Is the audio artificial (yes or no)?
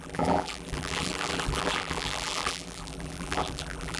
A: yes